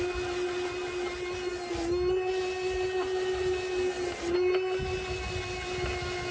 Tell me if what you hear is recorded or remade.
recorded